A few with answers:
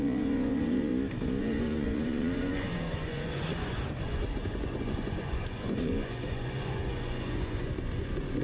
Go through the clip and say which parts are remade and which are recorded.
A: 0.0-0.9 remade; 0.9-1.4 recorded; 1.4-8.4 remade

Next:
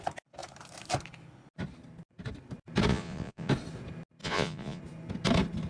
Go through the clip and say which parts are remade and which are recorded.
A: 0.0-2.9 recorded; 2.9-3.5 remade; 3.5-4.2 recorded; 4.2-4.8 remade; 4.8-5.7 recorded

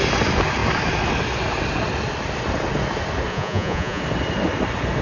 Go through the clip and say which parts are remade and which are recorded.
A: 0.0-3.3 recorded; 3.3-4.0 remade; 4.0-5.0 recorded

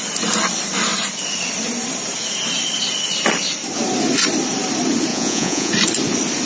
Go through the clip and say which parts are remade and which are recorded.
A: 0.0-5.1 recorded; 5.1-5.7 remade; 5.7-6.5 recorded

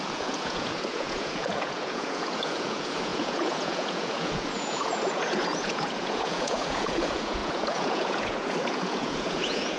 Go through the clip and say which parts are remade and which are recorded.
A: 0.0-9.8 remade

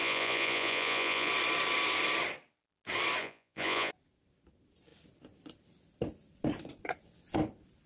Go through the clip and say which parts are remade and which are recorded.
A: 0.0-1.3 remade; 1.3-3.2 recorded; 3.2-3.9 remade; 3.9-7.9 recorded

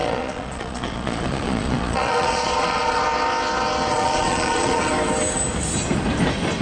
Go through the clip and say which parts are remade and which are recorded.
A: 0.0-3.0 remade; 3.0-3.9 recorded; 3.9-4.9 remade; 4.9-6.6 recorded